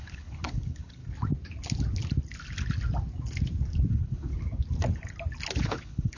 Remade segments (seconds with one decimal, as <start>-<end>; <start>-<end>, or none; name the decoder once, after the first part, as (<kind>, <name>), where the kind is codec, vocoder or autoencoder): 0.0-1.0 (codec, HILCodec); 3.9-4.3; 5.6-6.2